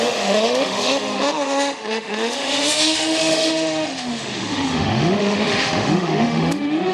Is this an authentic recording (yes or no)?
no